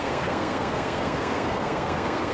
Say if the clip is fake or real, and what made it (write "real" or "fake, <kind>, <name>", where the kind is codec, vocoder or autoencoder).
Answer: fake, codec, SNAC